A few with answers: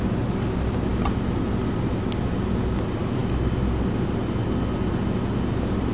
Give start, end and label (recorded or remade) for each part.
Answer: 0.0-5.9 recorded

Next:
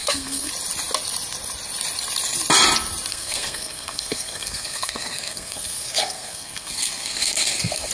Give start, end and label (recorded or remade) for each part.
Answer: 0.0-0.5 remade; 0.5-3.1 recorded; 3.1-7.9 remade

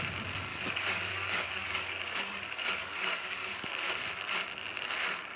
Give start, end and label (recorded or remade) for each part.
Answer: 0.0-0.5 recorded; 0.5-3.7 remade; 3.7-5.4 recorded

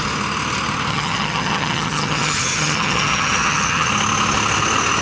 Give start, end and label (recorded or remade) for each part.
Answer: 0.0-0.9 recorded; 0.9-3.9 remade; 3.9-5.0 recorded

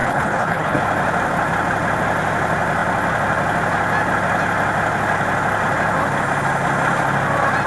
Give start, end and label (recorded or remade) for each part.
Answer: 0.0-0.8 remade; 0.8-7.7 recorded

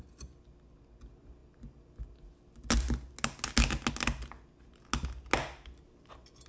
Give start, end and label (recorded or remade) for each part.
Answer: 0.0-6.5 recorded

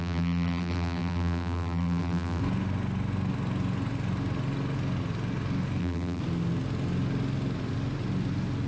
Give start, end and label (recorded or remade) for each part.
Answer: 0.0-2.4 remade; 2.4-5.8 recorded; 5.8-6.2 remade; 6.2-8.7 recorded

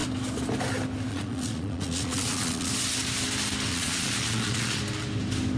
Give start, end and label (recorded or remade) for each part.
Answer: 0.0-1.1 recorded; 1.1-2.7 remade; 2.7-3.7 recorded; 3.7-4.8 remade; 4.8-5.6 recorded